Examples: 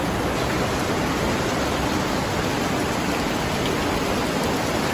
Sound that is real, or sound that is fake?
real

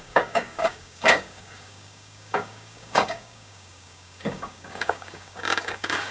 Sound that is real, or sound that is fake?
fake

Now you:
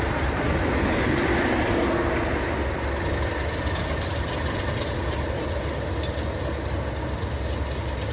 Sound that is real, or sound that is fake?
real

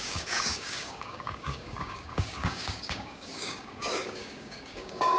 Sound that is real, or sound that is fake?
fake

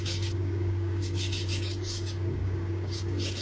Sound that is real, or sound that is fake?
fake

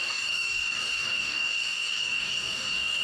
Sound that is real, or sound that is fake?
fake